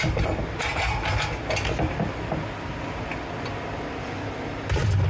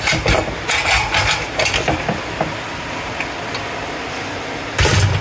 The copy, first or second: second